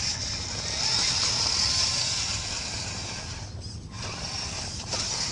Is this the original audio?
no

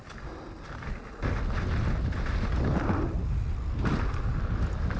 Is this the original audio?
yes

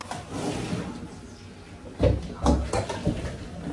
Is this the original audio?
yes